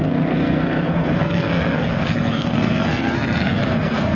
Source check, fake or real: fake